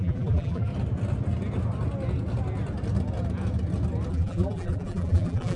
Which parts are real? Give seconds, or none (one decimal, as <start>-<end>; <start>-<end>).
0.7-4.1

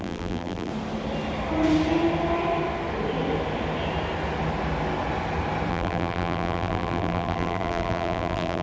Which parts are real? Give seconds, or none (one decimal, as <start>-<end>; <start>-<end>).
0.7-5.7

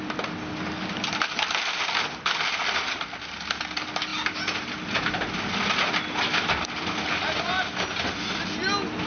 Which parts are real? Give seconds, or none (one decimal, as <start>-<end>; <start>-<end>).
0.0-9.1

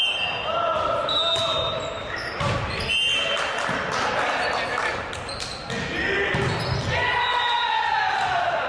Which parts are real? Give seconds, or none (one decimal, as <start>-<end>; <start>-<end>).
0.0-8.7

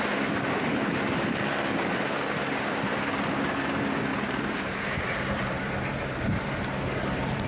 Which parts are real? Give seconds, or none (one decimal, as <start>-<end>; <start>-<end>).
0.0-4.1; 6.8-7.5

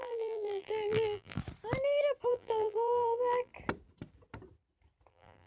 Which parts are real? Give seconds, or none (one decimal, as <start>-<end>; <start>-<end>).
1.4-2.3; 3.5-5.1

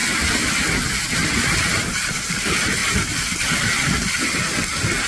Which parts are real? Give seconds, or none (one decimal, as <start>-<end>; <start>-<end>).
0.0-2.8; 4.4-5.1

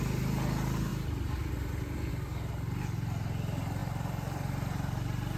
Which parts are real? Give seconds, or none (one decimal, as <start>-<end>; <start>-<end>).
0.0-3.8